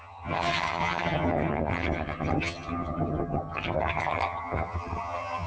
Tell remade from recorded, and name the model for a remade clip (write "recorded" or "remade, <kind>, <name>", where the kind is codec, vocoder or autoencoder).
remade, vocoder, HiFi-GAN